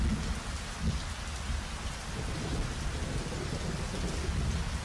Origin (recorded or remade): recorded